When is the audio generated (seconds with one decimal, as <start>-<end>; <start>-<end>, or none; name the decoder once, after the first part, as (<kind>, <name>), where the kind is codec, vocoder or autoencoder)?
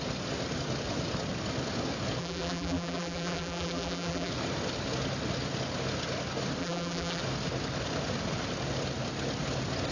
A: 2.2-4.3 (vocoder, BigVGAN v2); 6.6-7.2